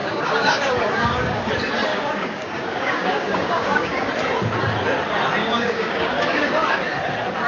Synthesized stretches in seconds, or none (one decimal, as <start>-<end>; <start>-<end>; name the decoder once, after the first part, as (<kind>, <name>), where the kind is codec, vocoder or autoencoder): 0.0-1.5 (codec, DAC); 1.9-4.1; 5.4-6.5